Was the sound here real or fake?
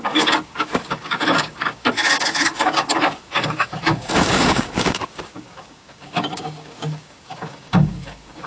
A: fake